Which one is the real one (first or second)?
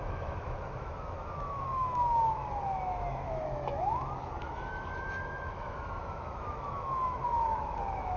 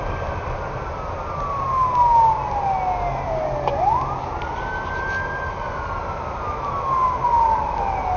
second